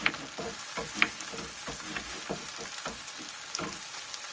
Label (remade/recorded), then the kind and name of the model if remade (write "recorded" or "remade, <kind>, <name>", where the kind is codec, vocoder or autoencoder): recorded